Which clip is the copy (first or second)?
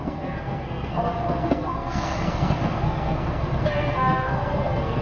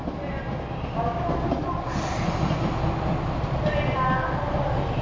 first